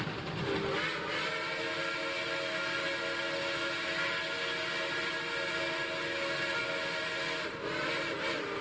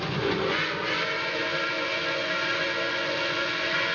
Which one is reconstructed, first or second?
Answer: second